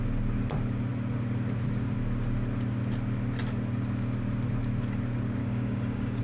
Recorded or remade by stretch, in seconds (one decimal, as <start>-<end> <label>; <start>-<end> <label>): 0.0-5.4 recorded; 5.4-6.2 remade